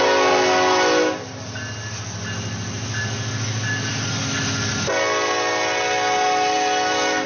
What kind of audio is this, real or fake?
real